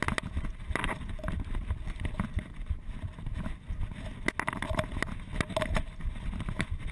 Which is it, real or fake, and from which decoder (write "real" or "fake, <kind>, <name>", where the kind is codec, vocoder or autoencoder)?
real